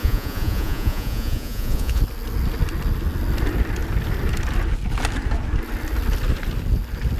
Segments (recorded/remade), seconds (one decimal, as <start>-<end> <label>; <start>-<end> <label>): 0.0-2.0 remade; 2.0-7.2 recorded